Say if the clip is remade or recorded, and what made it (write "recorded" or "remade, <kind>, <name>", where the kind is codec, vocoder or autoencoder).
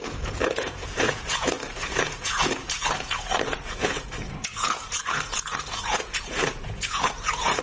remade, vocoder, Vocos